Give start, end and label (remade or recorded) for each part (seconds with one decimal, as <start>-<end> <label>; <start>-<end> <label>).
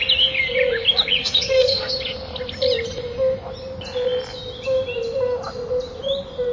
0.0-1.2 recorded; 1.2-1.9 remade; 1.9-6.5 recorded